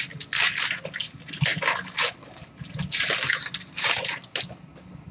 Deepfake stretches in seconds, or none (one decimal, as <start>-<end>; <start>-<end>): none